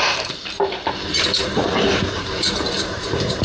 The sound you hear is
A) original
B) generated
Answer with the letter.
B